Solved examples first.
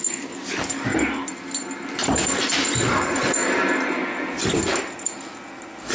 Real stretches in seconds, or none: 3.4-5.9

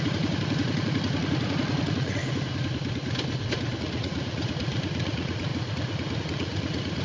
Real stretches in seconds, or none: 2.2-3.8; 5.5-6.2

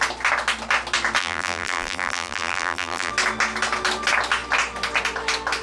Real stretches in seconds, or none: 0.0-1.2; 3.1-5.6

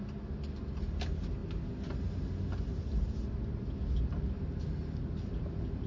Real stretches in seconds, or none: 0.0-5.9

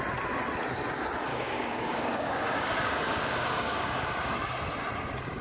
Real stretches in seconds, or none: 0.0-1.3; 4.5-5.4

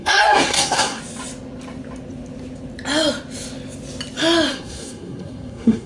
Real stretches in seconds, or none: 1.0-4.5